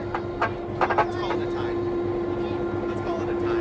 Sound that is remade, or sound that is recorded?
recorded